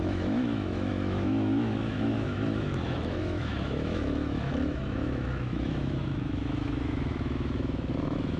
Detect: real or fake fake